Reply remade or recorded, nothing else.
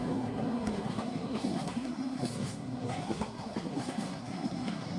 remade